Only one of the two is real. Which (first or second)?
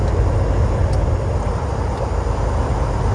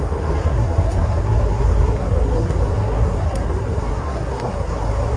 first